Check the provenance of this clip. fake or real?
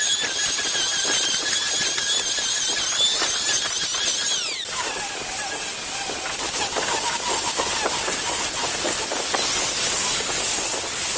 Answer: real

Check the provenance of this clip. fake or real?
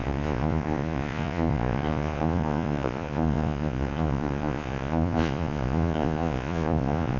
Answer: fake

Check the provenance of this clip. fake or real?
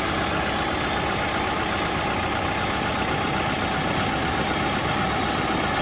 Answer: real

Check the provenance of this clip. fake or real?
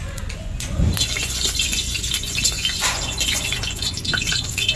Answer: fake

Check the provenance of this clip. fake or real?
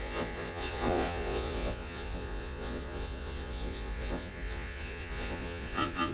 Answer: fake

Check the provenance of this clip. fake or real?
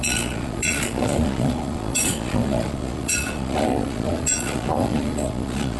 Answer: fake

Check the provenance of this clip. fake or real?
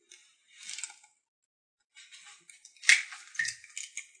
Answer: real